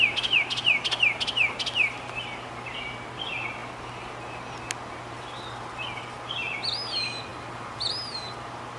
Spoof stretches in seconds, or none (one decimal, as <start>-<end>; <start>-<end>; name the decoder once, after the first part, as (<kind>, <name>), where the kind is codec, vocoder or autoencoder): none